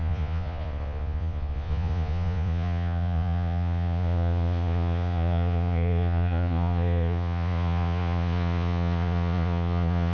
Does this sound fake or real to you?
fake